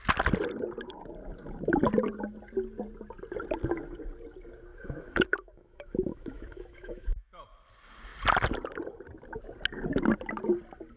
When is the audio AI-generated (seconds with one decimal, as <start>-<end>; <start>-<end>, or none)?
4.7-7.3